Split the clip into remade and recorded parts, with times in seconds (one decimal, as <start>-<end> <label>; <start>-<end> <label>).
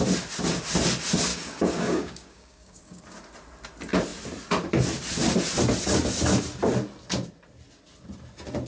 0.0-1.3 recorded; 1.3-3.0 remade; 3.0-8.7 recorded